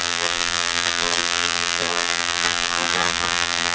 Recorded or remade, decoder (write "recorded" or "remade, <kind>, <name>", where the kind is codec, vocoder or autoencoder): remade, vocoder, BigVGAN v2